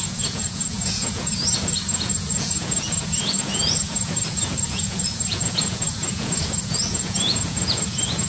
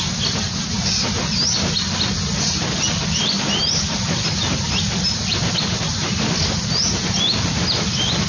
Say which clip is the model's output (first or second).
first